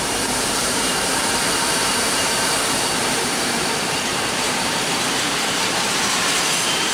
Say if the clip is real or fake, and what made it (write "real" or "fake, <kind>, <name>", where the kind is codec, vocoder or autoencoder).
fake, vocoder, BigVGAN v2